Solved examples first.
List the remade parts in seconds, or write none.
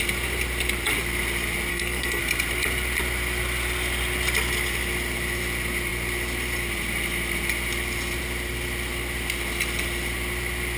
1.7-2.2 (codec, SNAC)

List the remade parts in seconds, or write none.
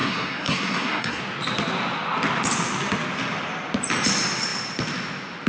0.0-1.2 (codec, SNAC)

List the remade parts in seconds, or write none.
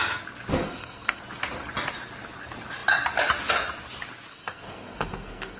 0.5-1.2 (codec, SNAC); 4.3-5.6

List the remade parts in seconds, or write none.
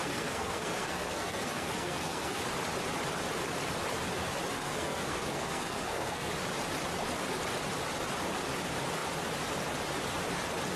0.0-2.4 (codec, SNAC); 4.5-6.3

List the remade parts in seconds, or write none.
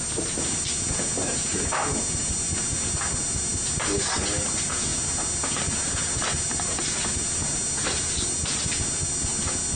none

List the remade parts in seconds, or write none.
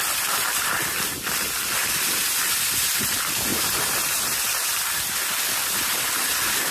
none